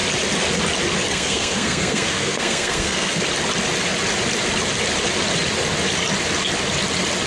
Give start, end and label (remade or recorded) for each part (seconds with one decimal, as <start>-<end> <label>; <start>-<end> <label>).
0.0-1.1 recorded; 1.1-3.2 remade; 3.2-7.3 recorded